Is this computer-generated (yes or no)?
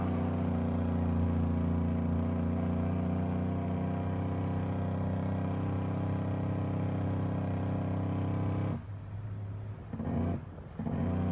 no